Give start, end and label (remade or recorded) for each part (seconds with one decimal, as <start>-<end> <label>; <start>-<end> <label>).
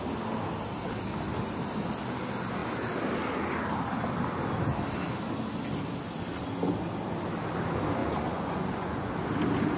0.0-8.0 recorded; 8.0-9.1 remade; 9.1-9.8 recorded